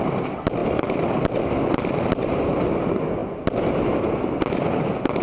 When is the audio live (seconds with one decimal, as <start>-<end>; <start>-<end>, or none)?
0.0-5.2